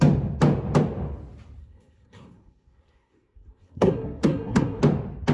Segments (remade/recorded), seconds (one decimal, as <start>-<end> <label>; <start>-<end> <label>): 0.0-1.6 recorded; 1.6-4.8 remade; 4.8-5.3 recorded